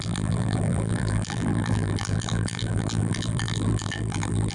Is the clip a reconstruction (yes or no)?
yes